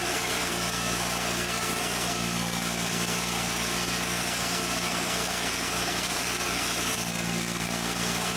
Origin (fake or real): fake